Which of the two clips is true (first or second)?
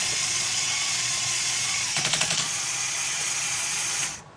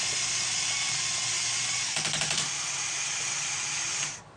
second